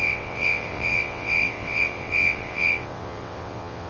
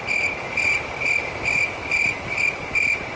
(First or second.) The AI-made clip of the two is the first